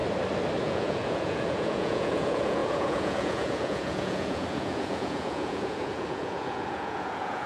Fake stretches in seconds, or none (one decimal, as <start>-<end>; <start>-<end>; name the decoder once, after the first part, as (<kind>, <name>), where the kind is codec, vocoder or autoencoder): 0.6-7.5 (vocoder, Vocos)